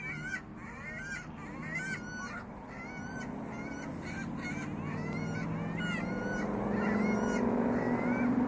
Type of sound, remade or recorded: recorded